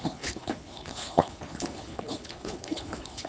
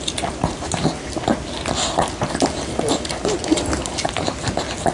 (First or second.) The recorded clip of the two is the second